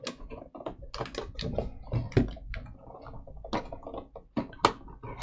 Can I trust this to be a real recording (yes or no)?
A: yes